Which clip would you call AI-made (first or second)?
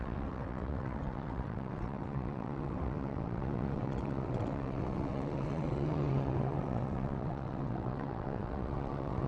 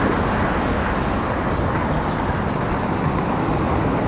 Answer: first